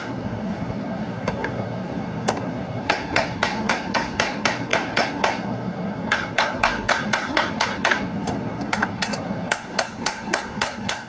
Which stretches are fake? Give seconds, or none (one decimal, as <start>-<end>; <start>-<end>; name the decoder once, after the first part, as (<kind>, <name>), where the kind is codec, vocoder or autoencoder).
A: 0.0-11.1 (codec, SNAC)